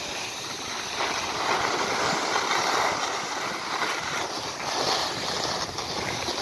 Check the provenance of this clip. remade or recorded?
recorded